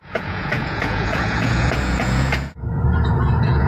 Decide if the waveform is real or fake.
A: fake